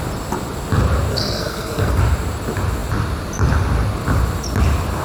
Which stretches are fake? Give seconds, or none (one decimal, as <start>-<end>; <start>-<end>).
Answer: 1.1-2.0